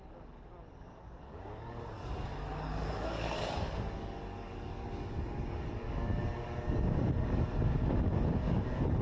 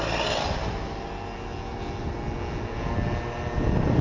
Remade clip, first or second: first